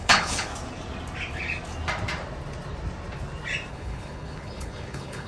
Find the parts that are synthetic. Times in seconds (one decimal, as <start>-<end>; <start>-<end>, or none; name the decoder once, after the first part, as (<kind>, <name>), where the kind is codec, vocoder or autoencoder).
0.0-0.5 (codec, HILCodec); 3.7-5.3